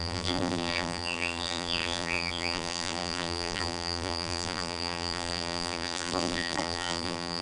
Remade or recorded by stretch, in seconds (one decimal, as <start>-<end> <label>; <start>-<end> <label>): 0.0-7.4 remade